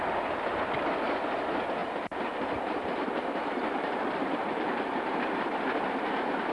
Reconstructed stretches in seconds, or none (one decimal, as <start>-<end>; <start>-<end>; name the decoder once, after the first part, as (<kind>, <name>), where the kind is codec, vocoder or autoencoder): 1.8-5.1 (vocoder, BigVGAN v2)